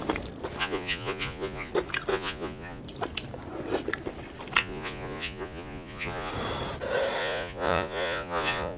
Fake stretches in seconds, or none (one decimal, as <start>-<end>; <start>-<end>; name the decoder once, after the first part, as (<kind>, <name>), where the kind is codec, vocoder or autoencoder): 0.6-1.7 (vocoder, Vocos); 2.1-2.8; 4.6-6.3; 7.2-8.8